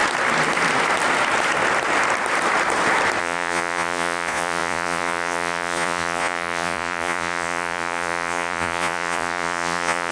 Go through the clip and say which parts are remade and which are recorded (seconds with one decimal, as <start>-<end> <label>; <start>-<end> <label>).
0.0-3.2 recorded; 3.2-10.1 remade